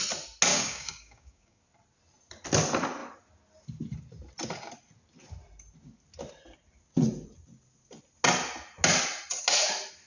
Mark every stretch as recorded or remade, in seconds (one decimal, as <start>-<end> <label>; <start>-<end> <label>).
0.0-0.5 recorded; 0.5-1.6 remade; 1.6-10.1 recorded